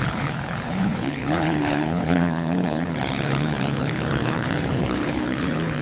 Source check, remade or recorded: remade